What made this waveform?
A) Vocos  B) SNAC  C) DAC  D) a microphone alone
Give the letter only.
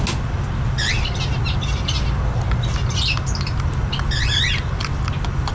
D